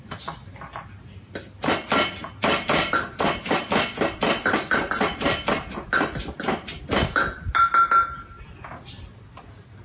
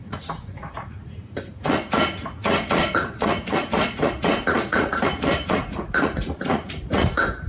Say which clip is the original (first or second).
first